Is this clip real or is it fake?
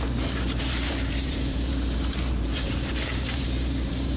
fake